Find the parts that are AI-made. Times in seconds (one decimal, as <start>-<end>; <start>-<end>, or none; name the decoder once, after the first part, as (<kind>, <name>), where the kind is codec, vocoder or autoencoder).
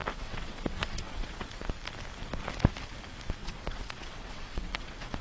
0.0-1.7 (vocoder, WaveNeXt); 3.4-5.2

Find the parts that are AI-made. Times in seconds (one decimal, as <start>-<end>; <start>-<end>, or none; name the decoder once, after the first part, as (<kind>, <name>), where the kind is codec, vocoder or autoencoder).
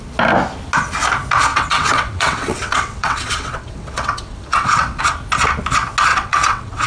1.5-5.0 (vocoder, WaveNeXt); 6.1-6.9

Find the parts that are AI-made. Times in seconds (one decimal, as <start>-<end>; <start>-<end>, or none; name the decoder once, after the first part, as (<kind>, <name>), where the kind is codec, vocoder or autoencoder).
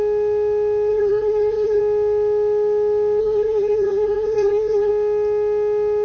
0.9-1.8 (codec, SNAC); 3.2-4.9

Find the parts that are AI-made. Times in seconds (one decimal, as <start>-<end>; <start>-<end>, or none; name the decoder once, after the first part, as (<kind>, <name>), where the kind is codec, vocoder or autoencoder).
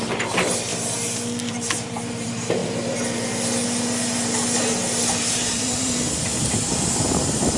0.0-0.7 (vocoder, BigVGAN v2); 1.5-2.6; 5.3-7.6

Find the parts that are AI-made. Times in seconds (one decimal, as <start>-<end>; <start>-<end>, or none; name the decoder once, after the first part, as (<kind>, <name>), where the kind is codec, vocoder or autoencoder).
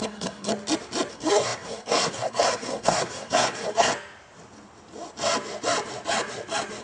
0.0-0.5 (codec, SNAC); 1.1-3.9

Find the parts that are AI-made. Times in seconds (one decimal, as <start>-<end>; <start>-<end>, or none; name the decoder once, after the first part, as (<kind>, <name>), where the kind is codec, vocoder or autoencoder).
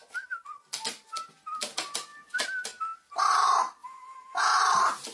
3.8-4.6 (vocoder, Vocos)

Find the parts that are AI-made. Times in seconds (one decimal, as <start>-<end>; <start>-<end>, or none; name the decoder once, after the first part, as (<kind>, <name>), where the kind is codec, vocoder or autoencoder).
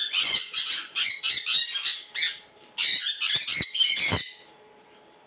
0.0-1.1 (vocoder, Vocos)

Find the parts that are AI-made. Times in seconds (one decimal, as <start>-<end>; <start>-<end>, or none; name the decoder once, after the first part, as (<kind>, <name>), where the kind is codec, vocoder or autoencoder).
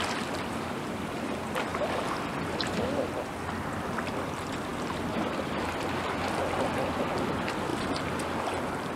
none